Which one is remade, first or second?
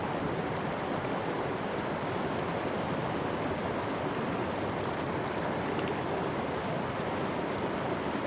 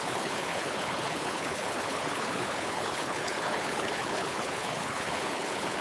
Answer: second